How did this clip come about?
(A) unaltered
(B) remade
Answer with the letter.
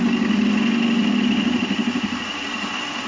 A